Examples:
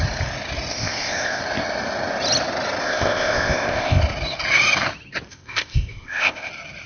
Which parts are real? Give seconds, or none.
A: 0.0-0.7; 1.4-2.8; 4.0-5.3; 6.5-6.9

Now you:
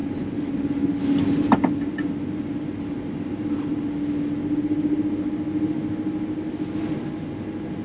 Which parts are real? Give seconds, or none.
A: 0.0-7.8

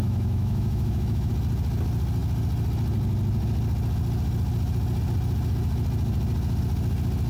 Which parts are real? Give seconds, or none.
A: 1.3-7.3

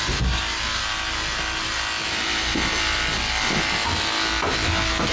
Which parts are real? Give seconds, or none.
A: 0.0-5.1

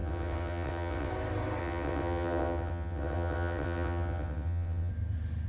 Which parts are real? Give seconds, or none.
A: 1.1-1.6; 4.9-5.5

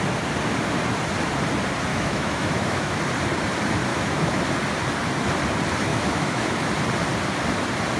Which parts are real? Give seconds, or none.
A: 0.0-1.9; 3.0-3.9; 4.4-5.9; 6.7-8.0